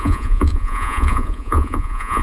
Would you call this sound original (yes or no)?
no